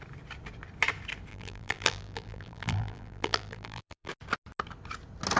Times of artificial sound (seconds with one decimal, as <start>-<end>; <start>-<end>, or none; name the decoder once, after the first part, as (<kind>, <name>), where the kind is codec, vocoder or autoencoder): 1.3-4.1 (vocoder, BigVGAN v2)